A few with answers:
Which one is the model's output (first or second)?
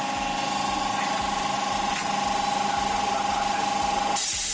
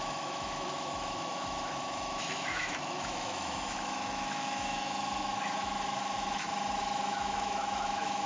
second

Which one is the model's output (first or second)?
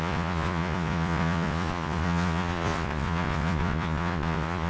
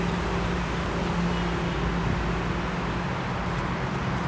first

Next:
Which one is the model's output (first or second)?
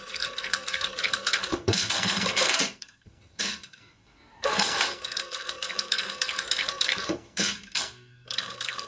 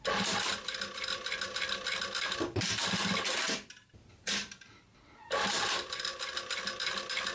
first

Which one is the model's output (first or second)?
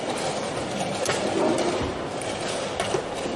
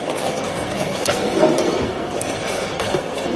second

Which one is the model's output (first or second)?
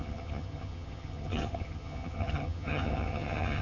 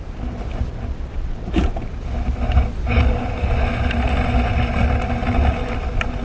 first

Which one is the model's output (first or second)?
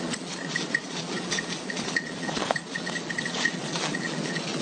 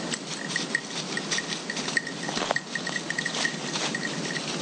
first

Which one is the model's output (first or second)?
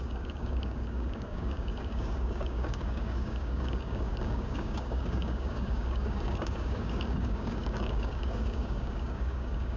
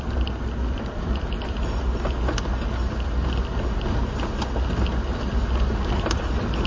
first